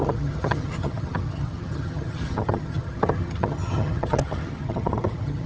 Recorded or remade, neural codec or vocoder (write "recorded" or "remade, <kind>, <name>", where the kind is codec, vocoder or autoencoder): remade, vocoder, HiFi-GAN